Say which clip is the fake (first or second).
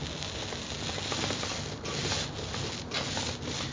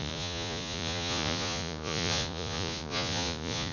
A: second